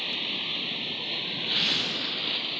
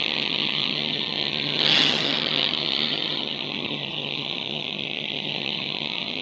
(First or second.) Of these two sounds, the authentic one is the first